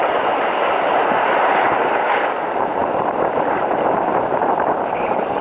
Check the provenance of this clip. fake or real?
fake